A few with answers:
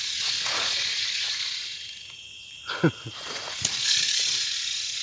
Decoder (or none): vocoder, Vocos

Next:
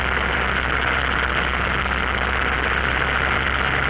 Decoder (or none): none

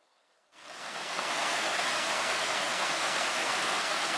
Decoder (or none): codec, SNAC